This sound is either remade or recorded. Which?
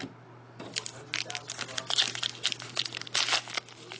recorded